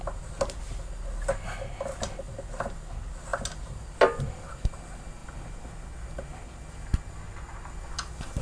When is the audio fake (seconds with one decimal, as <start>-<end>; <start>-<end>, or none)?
none